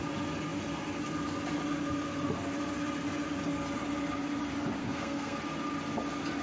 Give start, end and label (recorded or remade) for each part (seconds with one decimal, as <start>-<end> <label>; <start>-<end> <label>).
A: 0.0-4.8 recorded; 4.8-5.4 remade; 5.4-6.4 recorded